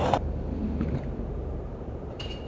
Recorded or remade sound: remade